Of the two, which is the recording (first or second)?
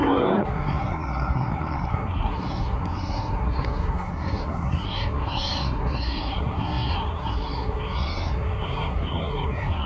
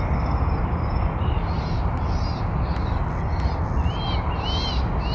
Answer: second